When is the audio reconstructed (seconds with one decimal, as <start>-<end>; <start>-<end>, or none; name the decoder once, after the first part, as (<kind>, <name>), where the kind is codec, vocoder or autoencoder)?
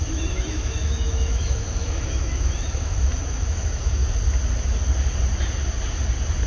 0.0-4.0 (autoencoder, DAC-VAE)